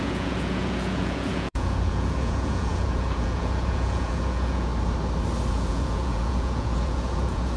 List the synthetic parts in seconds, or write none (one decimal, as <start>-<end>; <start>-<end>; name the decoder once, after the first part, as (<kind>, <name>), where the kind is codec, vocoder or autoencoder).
0.0-4.7 (vocoder, Vocos); 5.5-7.6